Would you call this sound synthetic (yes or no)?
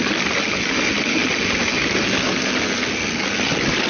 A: no